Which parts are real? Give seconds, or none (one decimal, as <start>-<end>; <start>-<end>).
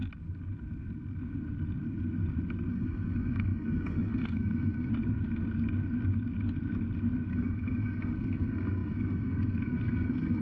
0.0-2.7; 4.9-7.3